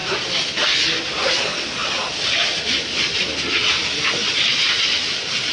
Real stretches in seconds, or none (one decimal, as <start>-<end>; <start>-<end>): 0.0-5.5